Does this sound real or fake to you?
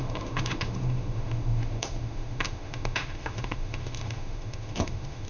fake